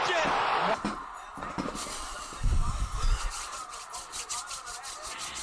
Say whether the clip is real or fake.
real